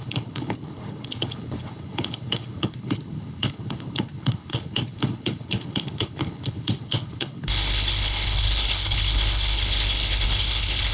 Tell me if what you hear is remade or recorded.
remade